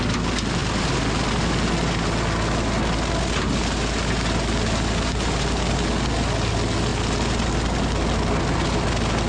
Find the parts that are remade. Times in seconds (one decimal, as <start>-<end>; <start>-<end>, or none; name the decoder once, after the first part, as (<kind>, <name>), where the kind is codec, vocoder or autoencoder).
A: none